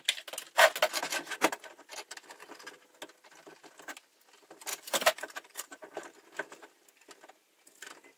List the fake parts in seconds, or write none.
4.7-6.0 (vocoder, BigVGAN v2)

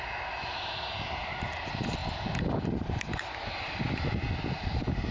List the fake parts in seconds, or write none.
none

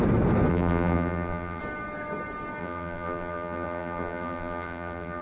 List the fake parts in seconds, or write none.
0.5-1.6 (vocoder, BigVGAN v2); 2.6-5.2

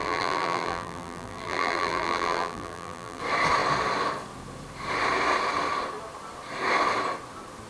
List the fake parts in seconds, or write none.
0.0-3.2 (vocoder, BigVGAN v2)

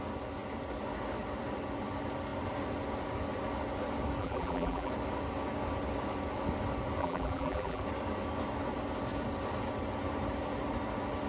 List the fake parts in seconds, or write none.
4.2-4.9 (vocoder, BigVGAN v2); 7.0-7.8

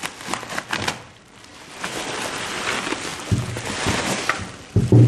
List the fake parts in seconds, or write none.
1.5-2.1 (vocoder, BigVGAN v2)